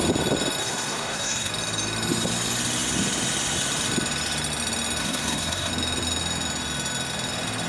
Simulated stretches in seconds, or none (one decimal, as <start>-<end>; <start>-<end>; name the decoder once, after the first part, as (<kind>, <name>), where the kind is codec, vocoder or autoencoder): 0.6-1.5 (codec, SNAC); 5.0-5.7